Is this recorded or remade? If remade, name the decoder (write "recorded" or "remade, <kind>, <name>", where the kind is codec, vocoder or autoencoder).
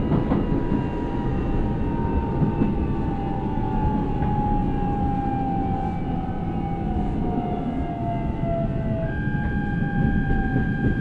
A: recorded